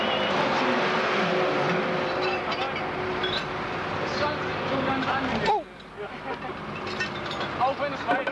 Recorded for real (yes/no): yes